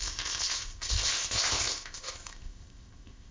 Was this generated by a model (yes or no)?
yes